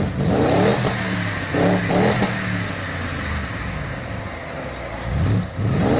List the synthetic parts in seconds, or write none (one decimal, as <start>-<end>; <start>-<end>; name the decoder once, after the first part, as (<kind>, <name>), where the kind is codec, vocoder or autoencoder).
none